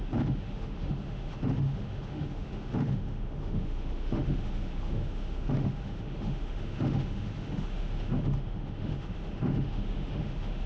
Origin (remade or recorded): remade